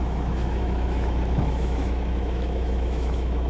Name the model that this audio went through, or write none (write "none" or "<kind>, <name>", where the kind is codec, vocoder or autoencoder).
autoencoder, DAC-VAE